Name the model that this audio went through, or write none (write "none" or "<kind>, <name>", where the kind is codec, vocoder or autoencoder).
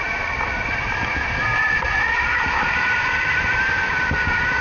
none